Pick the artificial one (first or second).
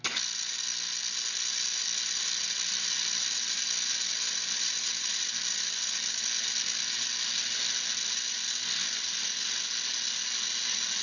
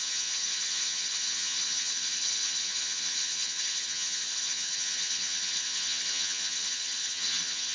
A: second